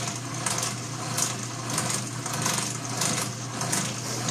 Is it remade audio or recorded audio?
recorded